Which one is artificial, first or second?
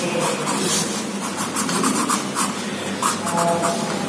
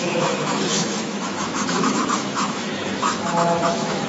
second